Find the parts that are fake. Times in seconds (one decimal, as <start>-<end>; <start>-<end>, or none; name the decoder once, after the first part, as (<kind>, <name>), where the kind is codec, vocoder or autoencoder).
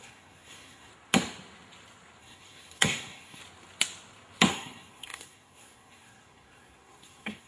0.0-0.9 (codec, SNAC); 2.2-3.4; 4.5-7.5